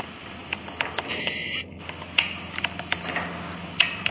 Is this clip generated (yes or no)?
no